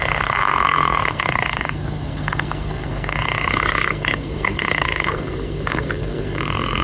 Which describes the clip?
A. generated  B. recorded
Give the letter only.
A